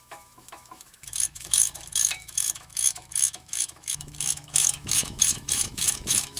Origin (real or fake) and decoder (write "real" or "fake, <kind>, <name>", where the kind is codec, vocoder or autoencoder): fake, autoencoder, DAC-VAE